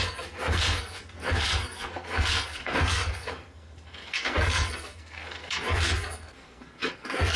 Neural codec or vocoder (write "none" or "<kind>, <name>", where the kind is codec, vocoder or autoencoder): codec, SNAC